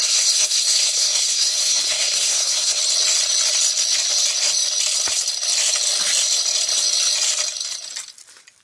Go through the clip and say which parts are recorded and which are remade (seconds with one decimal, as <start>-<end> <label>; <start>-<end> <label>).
0.0-2.8 remade; 2.8-8.6 recorded